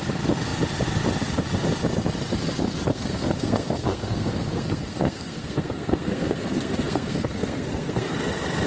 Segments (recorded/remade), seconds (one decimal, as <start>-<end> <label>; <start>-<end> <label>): 0.0-2.9 recorded; 2.9-8.1 remade; 8.1-8.7 recorded